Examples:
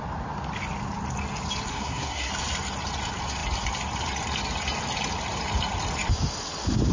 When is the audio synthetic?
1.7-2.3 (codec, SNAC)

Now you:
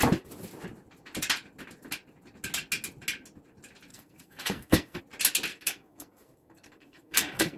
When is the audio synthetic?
3.9-5.0 (codec, SNAC); 5.5-7.6

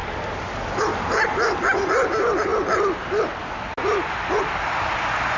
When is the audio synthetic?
none